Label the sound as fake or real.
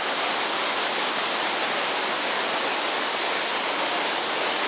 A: real